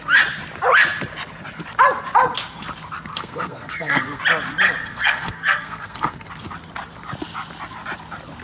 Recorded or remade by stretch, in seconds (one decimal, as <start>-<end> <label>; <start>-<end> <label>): 0.0-3.1 recorded; 3.1-4.2 remade; 4.2-4.8 recorded; 4.8-6.3 remade; 6.3-8.4 recorded